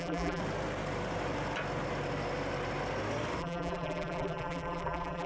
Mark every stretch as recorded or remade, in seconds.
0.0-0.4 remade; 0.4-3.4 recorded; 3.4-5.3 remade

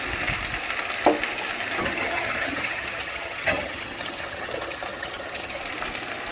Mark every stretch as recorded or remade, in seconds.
0.0-1.8 recorded; 1.8-5.6 remade; 5.6-6.3 recorded

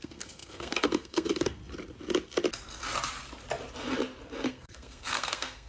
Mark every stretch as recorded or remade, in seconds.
0.0-1.6 remade; 1.6-4.5 recorded; 4.5-5.7 remade

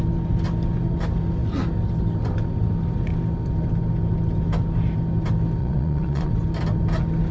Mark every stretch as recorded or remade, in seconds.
0.0-5.6 recorded; 5.6-6.3 remade; 6.3-7.3 recorded

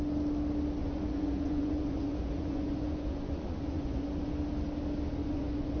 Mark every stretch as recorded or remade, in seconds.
0.0-0.8 recorded; 0.8-4.3 remade; 4.3-5.2 recorded; 5.2-5.8 remade

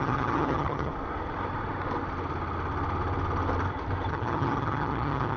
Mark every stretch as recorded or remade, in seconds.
0.0-0.9 remade; 0.9-4.1 recorded; 4.1-5.4 remade